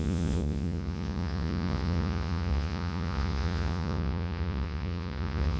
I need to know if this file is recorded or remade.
remade